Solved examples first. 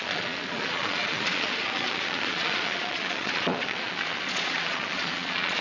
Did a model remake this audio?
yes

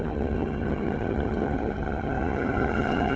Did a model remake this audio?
yes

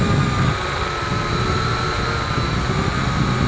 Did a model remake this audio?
no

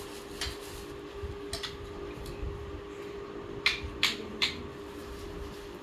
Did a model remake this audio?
no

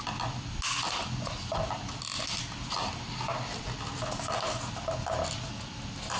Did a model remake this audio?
no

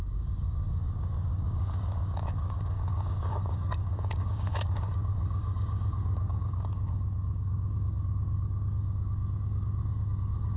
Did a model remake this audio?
yes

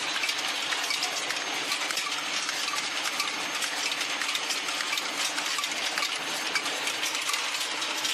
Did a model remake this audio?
no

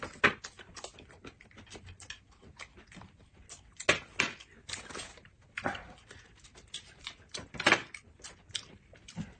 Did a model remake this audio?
no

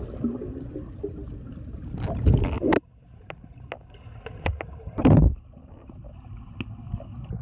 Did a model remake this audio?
no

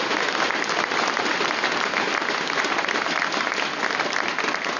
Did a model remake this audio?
no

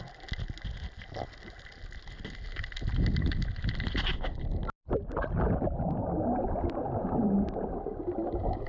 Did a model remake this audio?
no